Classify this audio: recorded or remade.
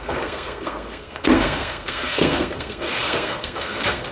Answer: remade